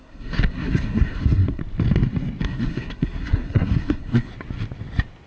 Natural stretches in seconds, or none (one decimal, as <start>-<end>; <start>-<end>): 1.6-2.4; 4.3-5.3